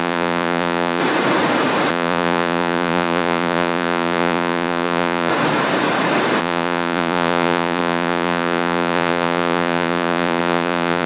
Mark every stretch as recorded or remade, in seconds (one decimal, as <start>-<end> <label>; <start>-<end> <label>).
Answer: 0.0-1.0 remade; 1.0-1.9 recorded; 1.9-5.3 remade; 5.3-6.4 recorded; 6.4-11.1 remade